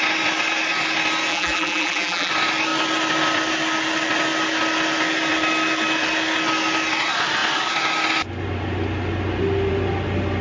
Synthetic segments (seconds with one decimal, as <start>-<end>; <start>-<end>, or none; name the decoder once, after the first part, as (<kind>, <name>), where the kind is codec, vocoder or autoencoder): 1.3-2.3 (vocoder, BigVGAN v2)